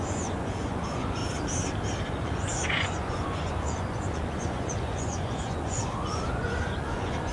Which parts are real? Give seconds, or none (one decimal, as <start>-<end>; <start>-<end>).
1.2-2.1